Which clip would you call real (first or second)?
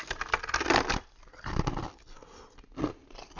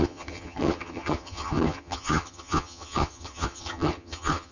first